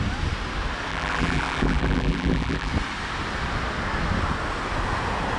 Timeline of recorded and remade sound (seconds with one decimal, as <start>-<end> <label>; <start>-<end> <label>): 0.0-0.9 recorded; 0.9-2.7 remade; 2.7-5.4 recorded